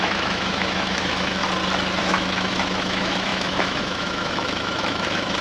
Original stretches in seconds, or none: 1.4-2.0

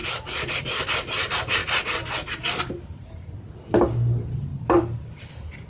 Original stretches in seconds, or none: 0.0-5.7

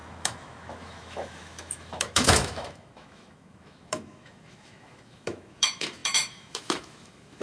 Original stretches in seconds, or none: none

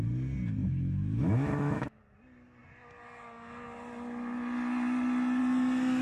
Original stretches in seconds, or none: 0.0-0.6; 2.0-6.0

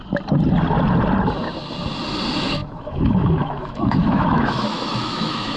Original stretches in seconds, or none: 0.0-2.6